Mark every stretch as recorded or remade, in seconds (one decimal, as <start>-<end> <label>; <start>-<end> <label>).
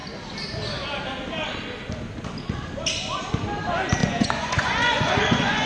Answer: 0.0-4.0 recorded; 4.0-5.7 remade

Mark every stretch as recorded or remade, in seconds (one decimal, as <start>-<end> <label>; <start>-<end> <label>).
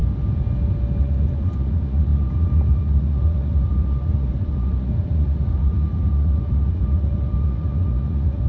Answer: 0.0-1.0 recorded; 1.0-8.5 remade